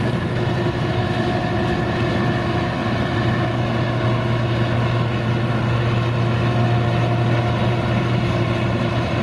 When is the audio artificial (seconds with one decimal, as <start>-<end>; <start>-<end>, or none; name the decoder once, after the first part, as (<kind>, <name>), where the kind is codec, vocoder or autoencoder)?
2.8-3.4 (vocoder, BigVGAN v2); 7.6-9.2